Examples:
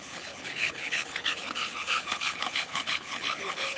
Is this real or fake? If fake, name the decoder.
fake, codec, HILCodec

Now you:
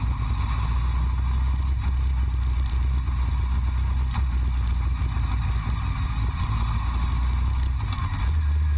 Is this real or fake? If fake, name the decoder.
real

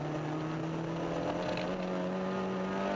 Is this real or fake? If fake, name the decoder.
real